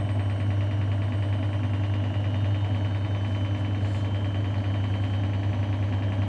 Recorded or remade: recorded